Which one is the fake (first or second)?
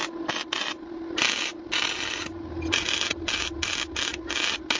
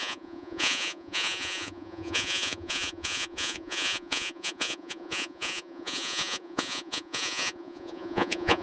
second